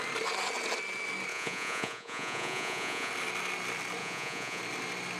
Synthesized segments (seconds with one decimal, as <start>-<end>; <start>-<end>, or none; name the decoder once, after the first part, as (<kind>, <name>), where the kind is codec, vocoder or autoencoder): 1.3-3.1 (vocoder, Vocos); 4.0-4.6